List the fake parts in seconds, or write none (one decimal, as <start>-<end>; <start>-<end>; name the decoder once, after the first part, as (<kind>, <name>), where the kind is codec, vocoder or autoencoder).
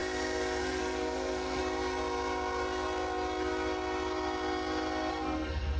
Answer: 0.6-1.6 (codec, SNAC); 5.1-5.8